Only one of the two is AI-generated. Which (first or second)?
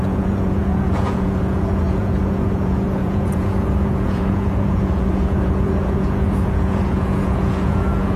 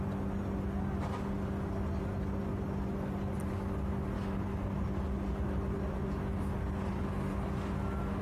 first